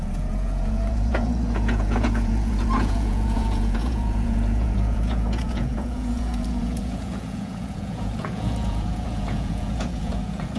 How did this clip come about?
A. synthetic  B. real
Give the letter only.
A